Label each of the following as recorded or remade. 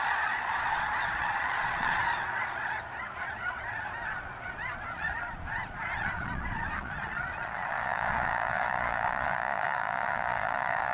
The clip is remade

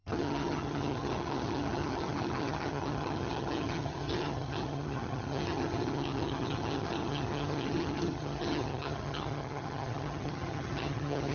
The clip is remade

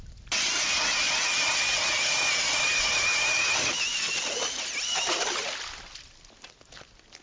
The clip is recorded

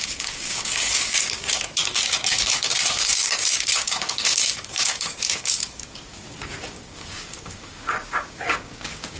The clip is remade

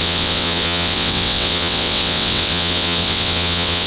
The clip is remade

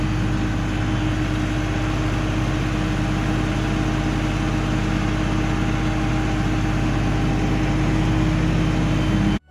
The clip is recorded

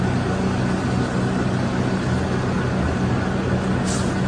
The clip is recorded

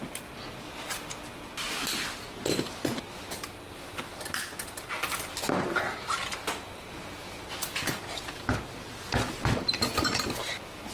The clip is recorded